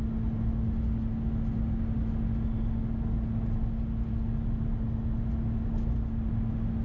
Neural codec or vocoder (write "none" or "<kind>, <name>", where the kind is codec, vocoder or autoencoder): none